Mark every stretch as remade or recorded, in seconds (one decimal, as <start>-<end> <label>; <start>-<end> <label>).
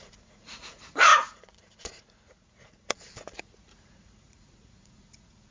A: 0.0-5.5 remade